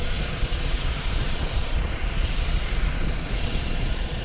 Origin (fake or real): fake